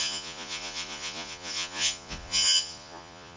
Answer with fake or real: fake